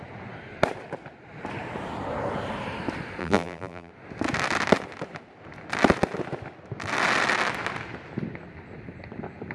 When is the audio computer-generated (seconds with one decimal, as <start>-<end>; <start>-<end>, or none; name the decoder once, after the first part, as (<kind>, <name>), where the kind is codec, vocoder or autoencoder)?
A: 3.2-3.9 (vocoder, BigVGAN v2)